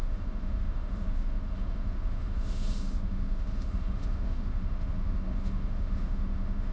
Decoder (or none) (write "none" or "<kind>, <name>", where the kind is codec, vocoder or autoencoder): autoencoder, DAC-VAE